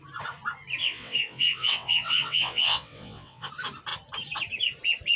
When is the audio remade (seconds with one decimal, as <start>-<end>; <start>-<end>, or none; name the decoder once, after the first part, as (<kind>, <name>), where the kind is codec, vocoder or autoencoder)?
0.8-3.5 (vocoder, WaveNeXt)